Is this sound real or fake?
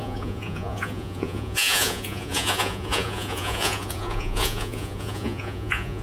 fake